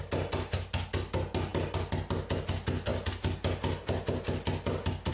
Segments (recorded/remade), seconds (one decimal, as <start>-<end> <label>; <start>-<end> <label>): 0.0-5.1 recorded